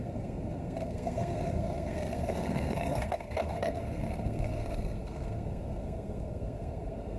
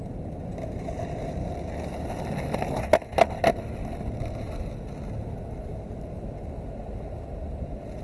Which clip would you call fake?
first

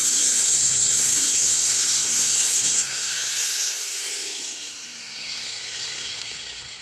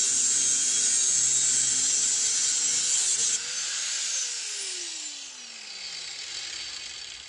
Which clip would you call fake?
first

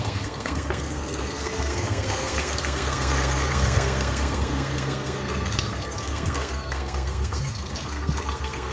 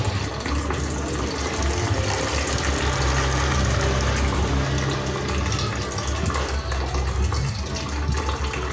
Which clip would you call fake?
first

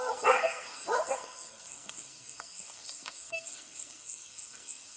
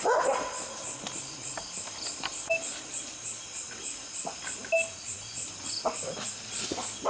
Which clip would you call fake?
first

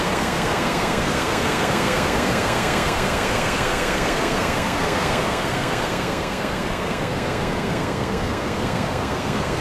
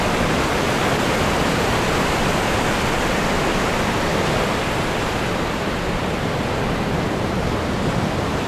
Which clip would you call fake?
first